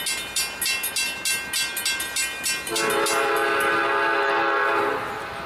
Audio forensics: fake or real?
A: real